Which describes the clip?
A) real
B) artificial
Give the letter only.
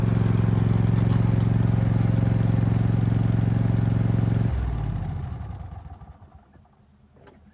A